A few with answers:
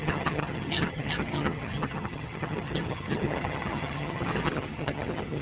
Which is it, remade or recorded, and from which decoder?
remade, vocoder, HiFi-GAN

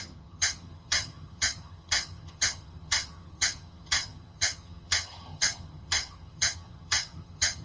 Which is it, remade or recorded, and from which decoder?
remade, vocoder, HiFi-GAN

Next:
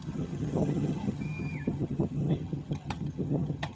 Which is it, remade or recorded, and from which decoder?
remade, vocoder, HiFi-GAN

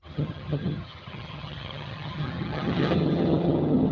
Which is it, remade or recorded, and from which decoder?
remade, vocoder, HiFi-GAN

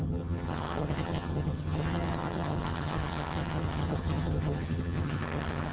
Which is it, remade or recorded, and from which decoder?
remade, vocoder, HiFi-GAN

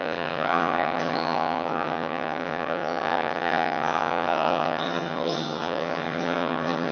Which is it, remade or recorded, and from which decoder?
remade, vocoder, HiFi-GAN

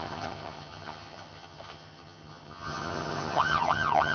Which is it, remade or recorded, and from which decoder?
remade, vocoder, HiFi-GAN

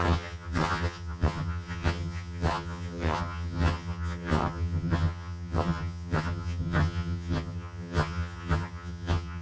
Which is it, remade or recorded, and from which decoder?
remade, vocoder, HiFi-GAN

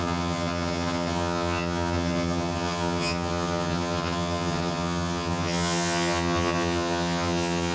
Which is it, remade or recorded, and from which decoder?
remade, vocoder, HiFi-GAN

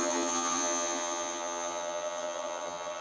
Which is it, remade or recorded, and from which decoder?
remade, vocoder, HiFi-GAN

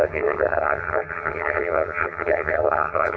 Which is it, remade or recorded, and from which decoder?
remade, vocoder, HiFi-GAN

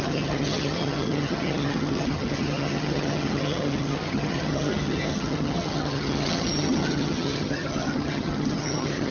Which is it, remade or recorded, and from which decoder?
remade, vocoder, HiFi-GAN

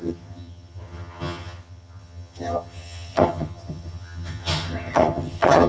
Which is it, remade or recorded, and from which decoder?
remade, vocoder, HiFi-GAN